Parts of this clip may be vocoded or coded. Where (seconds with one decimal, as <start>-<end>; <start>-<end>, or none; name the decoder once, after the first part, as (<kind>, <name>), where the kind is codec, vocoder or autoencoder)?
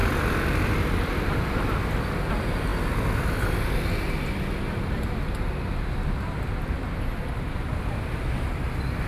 0.0-2.3 (vocoder, BigVGAN v2)